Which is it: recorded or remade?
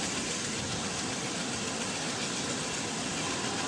recorded